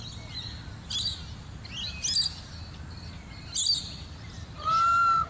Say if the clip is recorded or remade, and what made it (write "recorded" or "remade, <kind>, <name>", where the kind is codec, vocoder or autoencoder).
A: recorded